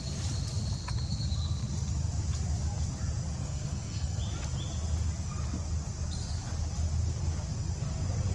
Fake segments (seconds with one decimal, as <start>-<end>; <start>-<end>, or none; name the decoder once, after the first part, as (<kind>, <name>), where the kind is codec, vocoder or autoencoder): 3.4-4.2 (codec, SNAC)